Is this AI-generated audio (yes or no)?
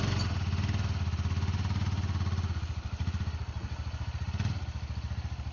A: no